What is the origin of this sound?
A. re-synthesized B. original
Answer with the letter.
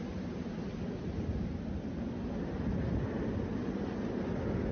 B